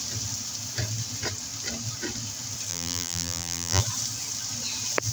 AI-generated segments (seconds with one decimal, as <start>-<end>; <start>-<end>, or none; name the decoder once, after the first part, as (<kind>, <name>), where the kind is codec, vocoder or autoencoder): 2.7-3.8 (vocoder, BigVGAN v2)